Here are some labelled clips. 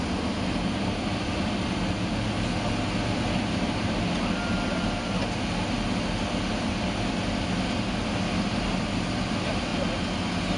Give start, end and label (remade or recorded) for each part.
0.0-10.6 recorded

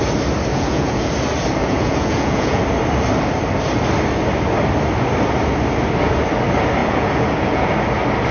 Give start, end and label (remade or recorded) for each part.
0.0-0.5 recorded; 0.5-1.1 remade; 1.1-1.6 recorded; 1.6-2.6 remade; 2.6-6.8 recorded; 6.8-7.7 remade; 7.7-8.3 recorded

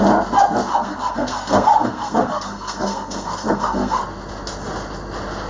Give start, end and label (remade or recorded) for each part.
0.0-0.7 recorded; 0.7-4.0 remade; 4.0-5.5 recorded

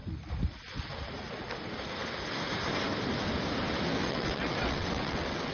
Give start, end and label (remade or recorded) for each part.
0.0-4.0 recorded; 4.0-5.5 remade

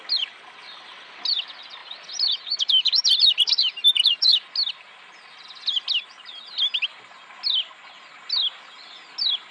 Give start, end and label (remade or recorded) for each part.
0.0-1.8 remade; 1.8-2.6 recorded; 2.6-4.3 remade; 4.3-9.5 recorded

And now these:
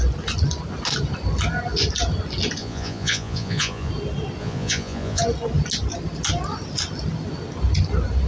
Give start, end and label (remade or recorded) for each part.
0.0-2.6 recorded; 2.6-3.9 remade; 3.9-4.4 recorded; 4.4-5.2 remade; 5.2-8.3 recorded

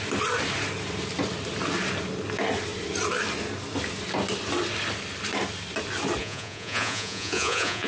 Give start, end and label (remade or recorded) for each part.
0.0-6.2 recorded; 6.2-7.9 remade

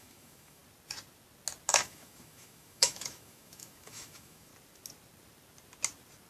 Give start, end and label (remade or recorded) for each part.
0.0-0.6 remade; 0.6-1.7 recorded; 1.7-4.5 remade; 4.5-6.3 recorded